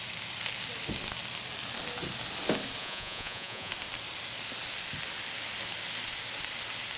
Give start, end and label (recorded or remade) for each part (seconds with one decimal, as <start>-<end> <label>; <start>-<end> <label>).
0.0-2.8 recorded; 2.8-3.7 remade; 3.7-7.0 recorded